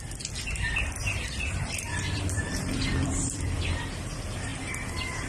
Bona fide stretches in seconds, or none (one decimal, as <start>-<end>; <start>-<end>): 4.5-5.3